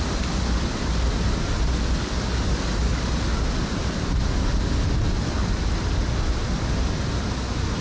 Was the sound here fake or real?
real